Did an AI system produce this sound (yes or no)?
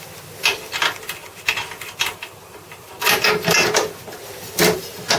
no